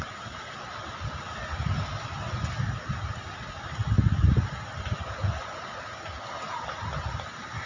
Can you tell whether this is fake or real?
real